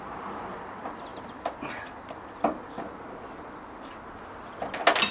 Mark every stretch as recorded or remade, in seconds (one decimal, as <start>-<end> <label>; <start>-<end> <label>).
0.0-5.1 recorded